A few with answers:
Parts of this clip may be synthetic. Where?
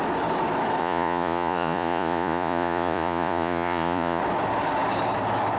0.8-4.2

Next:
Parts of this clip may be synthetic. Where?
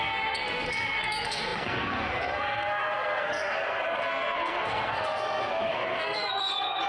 0.0-6.9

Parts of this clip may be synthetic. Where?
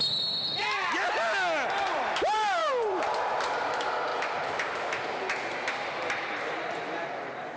2.6-3.3; 4.1-4.9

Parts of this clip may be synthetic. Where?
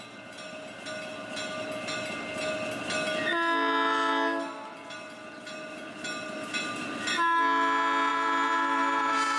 8.1-9.4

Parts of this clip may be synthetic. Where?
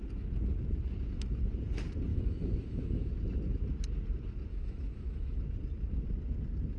2.1-3.1; 4.5-5.4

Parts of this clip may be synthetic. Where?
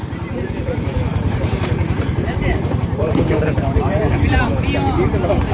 1.1-4.4